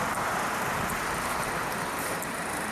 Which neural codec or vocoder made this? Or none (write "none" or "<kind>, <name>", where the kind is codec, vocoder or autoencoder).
vocoder, BigVGAN v2